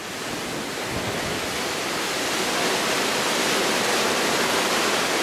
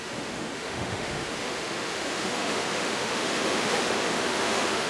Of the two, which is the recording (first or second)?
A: first